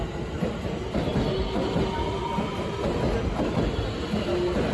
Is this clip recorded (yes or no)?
yes